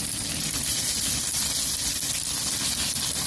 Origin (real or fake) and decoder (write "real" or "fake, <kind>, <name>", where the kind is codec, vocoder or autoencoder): real